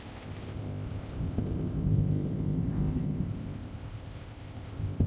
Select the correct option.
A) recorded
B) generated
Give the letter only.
B